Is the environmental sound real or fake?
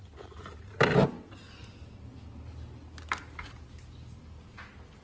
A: real